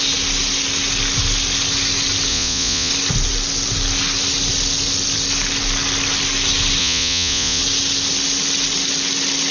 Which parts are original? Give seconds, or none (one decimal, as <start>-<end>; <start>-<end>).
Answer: 0.0-2.3; 2.9-6.8; 7.6-9.5